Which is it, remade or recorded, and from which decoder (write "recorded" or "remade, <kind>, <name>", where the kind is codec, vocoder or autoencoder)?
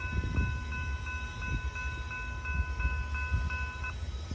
recorded